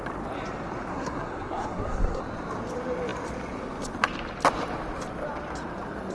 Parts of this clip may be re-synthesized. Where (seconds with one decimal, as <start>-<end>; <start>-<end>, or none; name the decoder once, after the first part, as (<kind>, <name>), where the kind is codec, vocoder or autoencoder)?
0.9-2.2 (codec, SNAC)